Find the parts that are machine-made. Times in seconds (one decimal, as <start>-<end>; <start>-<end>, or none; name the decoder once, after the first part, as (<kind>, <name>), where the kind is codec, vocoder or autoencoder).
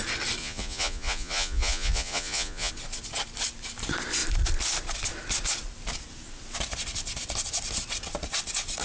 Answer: 0.4-2.7 (vocoder, Vocos)